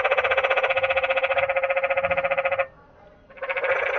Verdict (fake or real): real